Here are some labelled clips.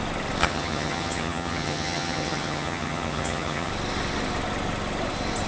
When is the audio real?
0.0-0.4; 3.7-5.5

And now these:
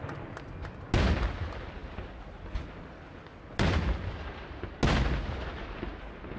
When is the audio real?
0.0-6.4

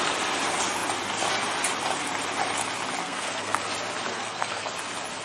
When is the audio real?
0.0-3.0; 3.6-4.1; 4.7-5.2

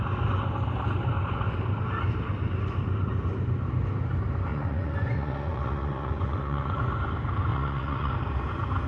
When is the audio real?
0.0-4.5; 6.8-7.5; 8.1-8.9

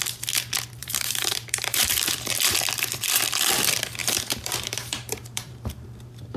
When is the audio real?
0.0-0.8; 2.1-4.0

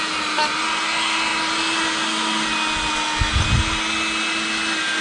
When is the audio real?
0.0-5.0